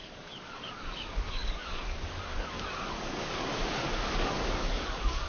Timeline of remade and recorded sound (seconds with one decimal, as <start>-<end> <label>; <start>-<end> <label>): 0.0-5.3 remade